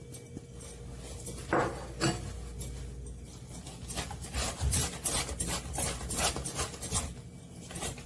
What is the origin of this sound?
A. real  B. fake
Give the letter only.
A